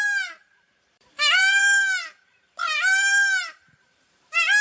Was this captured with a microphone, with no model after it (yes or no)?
no